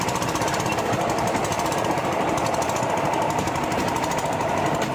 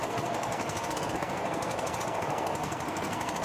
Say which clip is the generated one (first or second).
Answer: second